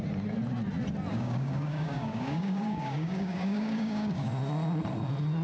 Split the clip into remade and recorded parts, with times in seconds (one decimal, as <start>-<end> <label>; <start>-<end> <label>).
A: 0.0-1.1 recorded; 1.1-4.3 remade; 4.3-5.4 recorded